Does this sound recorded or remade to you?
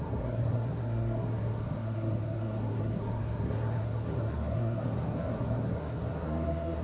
remade